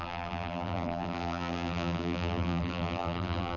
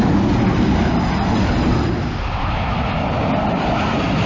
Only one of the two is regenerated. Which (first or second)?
first